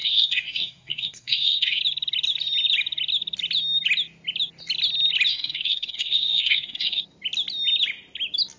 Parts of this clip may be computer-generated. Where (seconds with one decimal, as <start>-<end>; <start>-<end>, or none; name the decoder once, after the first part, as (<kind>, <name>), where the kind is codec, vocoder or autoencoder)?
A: 0.0-1.8 (codec, SNAC); 5.3-7.0